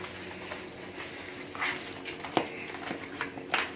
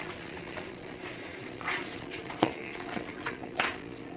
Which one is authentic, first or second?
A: first